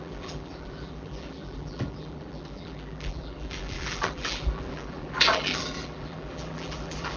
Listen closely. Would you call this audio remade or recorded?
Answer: remade